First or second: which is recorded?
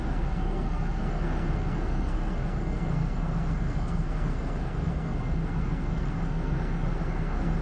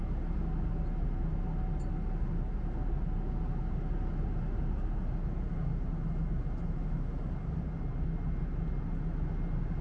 second